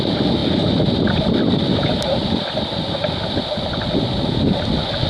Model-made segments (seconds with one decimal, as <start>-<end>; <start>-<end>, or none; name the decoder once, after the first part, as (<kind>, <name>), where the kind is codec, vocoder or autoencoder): none